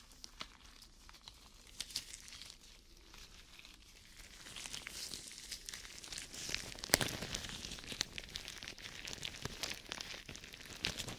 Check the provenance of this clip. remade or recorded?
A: recorded